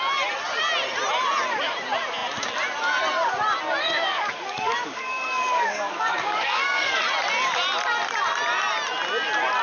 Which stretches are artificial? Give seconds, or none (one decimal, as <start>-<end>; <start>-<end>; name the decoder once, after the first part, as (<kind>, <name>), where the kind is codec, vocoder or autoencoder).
3.8-7.0 (codec, DAC)